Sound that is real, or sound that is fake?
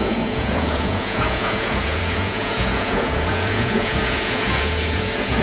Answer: fake